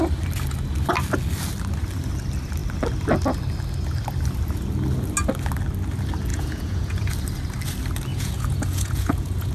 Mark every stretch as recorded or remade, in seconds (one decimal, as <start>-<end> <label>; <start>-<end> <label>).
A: 0.0-6.3 recorded; 6.3-7.1 remade; 7.1-8.1 recorded; 8.1-9.5 remade